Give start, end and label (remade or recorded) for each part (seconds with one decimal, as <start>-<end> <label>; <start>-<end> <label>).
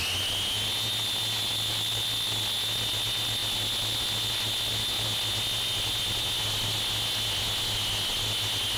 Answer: 0.0-8.8 recorded